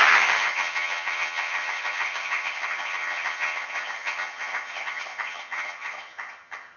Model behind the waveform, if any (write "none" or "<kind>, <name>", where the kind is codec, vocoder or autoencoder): vocoder, HiFi-GAN